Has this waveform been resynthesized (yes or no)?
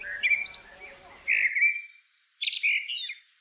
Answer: no